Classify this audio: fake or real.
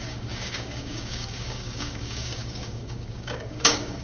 fake